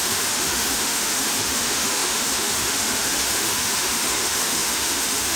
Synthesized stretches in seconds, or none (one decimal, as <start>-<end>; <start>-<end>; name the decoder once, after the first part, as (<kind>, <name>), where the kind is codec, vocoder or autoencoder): 0.0-5.4 (autoencoder, DAC-VAE)